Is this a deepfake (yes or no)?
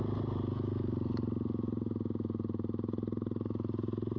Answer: no